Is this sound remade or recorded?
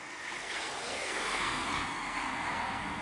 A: remade